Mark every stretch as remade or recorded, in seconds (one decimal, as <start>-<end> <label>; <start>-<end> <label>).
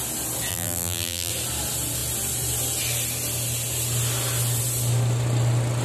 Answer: 0.0-0.5 recorded; 0.5-1.3 remade; 1.3-5.8 recorded